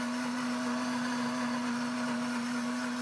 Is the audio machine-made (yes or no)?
no